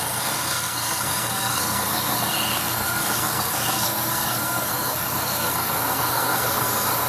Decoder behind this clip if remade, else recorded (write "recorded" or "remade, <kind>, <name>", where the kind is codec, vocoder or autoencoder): remade, codec, SNAC